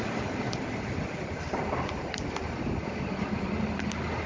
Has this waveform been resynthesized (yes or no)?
no